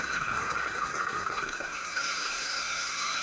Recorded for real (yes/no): no